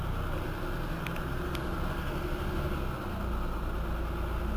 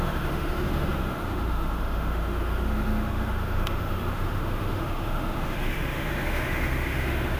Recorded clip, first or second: first